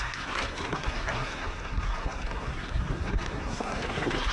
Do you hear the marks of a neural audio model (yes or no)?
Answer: yes